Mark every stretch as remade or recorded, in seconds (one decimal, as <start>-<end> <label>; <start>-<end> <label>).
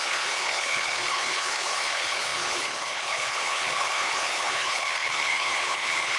0.0-6.2 remade